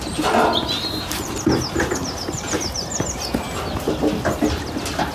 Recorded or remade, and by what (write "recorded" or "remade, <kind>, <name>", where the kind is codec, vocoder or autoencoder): recorded